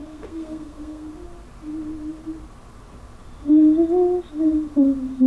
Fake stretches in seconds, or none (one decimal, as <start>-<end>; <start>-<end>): 0.0-1.1